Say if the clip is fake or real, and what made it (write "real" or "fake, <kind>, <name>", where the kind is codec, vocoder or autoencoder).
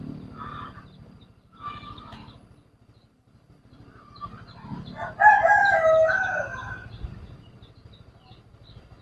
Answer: real